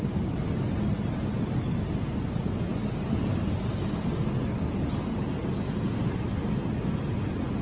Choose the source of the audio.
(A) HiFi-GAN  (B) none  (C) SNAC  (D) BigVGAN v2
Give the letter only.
B